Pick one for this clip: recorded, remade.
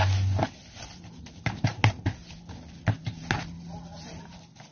recorded